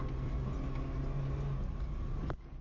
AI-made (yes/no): no